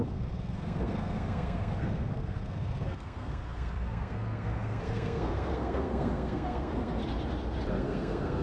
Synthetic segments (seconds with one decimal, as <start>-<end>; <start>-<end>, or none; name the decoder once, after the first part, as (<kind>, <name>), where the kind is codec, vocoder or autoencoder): 0.0-7.0 (codec, SNAC); 7.7-8.4